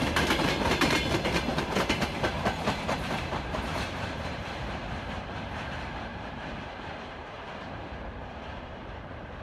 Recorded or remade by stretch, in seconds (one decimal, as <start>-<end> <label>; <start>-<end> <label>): 0.0-1.5 recorded; 1.5-5.2 remade; 5.2-6.1 recorded; 6.1-9.4 remade